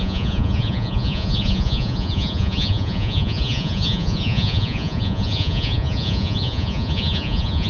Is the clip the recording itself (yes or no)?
no